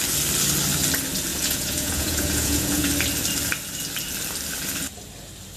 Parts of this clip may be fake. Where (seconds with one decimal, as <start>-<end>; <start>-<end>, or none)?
1.3-2.9